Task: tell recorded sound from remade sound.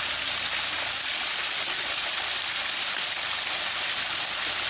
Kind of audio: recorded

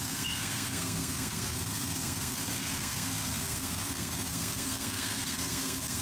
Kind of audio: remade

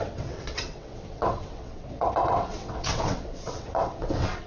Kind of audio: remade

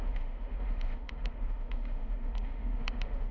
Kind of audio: remade